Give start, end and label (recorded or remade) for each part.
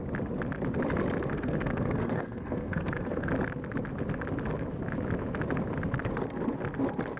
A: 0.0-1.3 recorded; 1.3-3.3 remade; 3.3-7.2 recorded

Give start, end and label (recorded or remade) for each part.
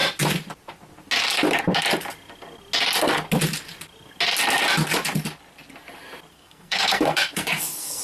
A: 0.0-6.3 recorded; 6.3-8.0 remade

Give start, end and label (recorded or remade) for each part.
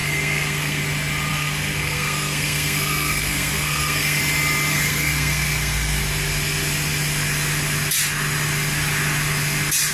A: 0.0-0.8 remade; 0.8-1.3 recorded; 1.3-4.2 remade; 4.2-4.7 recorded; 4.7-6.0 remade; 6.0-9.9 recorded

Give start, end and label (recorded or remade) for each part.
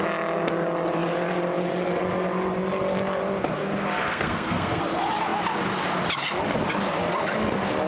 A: 0.0-4.1 recorded; 4.1-4.8 remade; 4.8-7.9 recorded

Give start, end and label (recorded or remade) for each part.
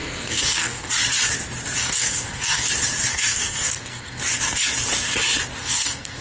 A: 0.0-0.9 remade; 0.9-1.8 recorded; 1.8-2.7 remade; 2.7-3.1 recorded; 3.1-4.2 remade; 4.2-5.6 recorded; 5.6-6.2 remade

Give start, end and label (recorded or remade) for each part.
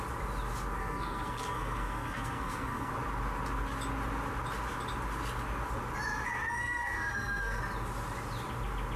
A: 0.0-0.8 recorded; 0.8-2.9 remade; 2.9-6.6 recorded; 6.6-7.6 remade; 7.6-9.0 recorded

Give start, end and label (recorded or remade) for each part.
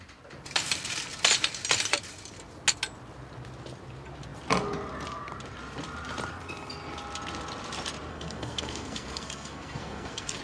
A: 0.0-8.1 recorded; 8.1-10.4 remade